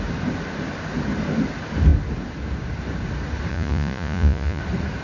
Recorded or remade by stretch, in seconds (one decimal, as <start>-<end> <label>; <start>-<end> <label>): 0.0-3.5 recorded; 3.5-4.6 remade; 4.6-5.0 recorded